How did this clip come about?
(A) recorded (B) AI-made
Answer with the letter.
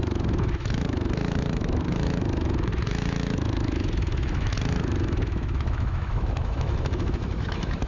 B